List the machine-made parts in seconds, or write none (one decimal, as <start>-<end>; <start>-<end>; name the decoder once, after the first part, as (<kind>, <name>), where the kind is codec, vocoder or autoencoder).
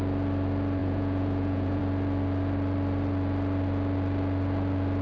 0.8-1.8 (vocoder, Vocos)